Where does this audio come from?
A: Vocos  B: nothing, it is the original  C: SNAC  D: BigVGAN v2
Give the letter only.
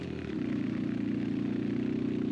B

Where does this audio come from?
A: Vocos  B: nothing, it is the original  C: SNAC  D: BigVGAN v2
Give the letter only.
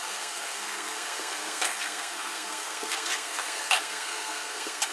C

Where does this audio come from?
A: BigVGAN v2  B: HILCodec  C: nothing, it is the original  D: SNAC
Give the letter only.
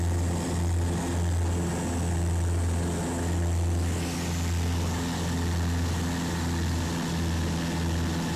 C